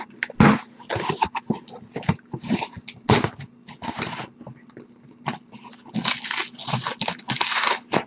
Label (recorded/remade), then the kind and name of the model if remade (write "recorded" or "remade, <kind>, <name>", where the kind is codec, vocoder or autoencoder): recorded